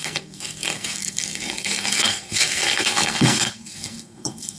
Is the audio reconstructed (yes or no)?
yes